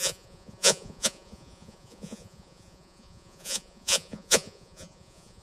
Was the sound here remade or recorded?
remade